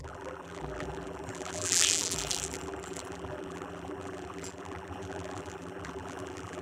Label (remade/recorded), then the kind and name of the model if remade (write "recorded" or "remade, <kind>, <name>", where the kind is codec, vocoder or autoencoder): remade, vocoder, BigVGAN v2